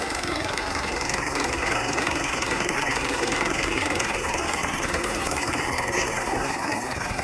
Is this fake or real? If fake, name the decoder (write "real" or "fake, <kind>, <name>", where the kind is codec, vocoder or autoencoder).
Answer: fake, codec, SNAC